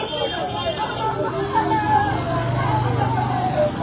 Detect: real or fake real